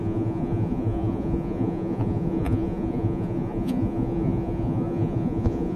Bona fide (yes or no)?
no